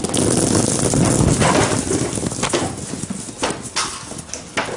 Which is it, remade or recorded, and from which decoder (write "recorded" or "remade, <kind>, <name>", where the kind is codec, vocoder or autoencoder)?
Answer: recorded